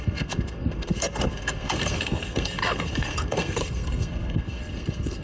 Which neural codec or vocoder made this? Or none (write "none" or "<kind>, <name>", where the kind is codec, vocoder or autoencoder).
codec, SNAC